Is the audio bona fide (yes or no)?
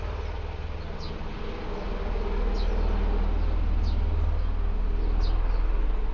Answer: yes